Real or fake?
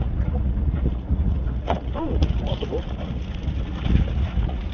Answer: fake